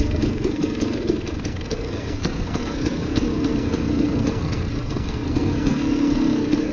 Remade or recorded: remade